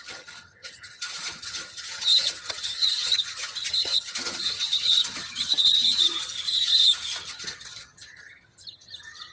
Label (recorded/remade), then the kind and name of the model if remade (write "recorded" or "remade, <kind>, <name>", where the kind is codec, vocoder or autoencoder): remade, vocoder, HiFi-GAN